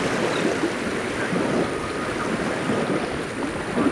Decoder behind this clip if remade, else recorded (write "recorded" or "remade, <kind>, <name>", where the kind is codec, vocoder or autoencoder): recorded